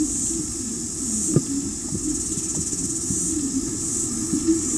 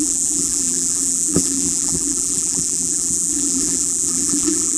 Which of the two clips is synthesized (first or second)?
second